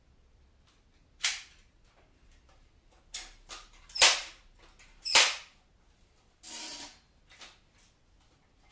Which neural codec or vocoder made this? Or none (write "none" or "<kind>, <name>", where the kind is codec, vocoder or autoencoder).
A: none